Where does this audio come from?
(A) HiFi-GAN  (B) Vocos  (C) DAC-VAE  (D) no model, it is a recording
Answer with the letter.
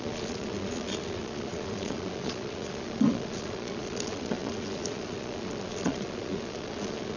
B